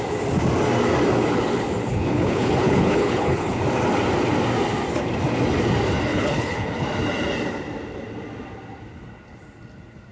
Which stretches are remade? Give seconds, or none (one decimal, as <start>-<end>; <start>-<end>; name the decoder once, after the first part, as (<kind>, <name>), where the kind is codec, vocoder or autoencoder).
1.9-3.6 (codec, HILCodec); 6.1-6.8